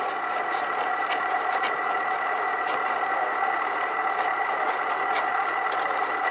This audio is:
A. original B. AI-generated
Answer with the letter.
A